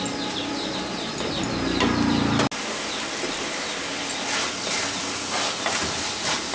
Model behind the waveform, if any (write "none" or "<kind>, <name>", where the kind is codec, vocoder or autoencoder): none